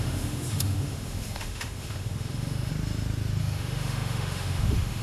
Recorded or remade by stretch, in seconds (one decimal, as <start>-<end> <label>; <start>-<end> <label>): 0.0-2.7 remade; 2.7-3.4 recorded; 3.4-5.0 remade